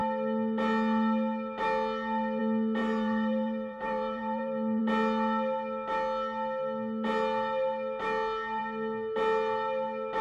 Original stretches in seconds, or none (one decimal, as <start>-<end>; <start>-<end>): 0.0-2.8; 4.8-10.2